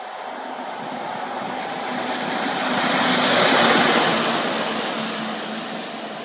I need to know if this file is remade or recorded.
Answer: recorded